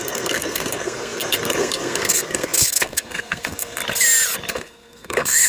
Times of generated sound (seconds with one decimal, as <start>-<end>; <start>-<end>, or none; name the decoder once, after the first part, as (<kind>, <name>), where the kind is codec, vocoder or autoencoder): 0.0-3.8 (codec, SNAC); 4.5-5.5